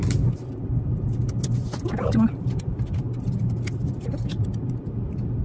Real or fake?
real